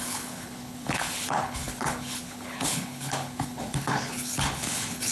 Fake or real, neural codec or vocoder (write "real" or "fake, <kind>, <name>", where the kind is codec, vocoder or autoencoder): fake, codec, HILCodec